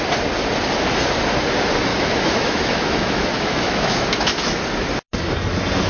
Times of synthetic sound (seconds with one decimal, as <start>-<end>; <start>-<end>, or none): 1.9-4.6